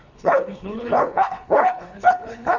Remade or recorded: remade